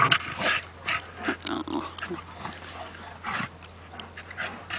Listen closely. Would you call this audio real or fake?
real